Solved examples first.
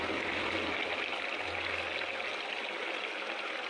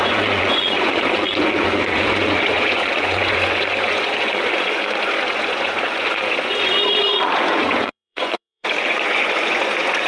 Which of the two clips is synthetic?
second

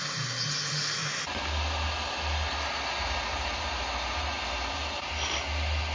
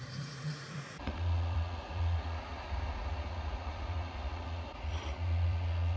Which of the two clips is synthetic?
second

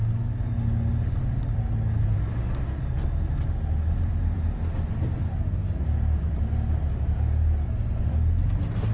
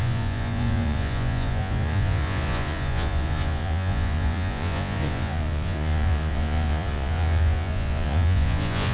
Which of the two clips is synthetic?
second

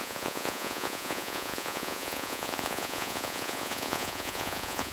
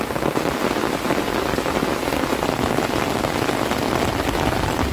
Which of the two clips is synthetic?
first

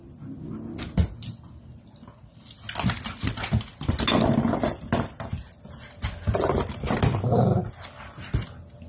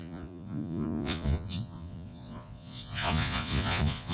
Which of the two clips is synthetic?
second